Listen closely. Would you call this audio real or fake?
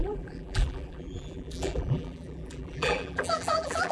fake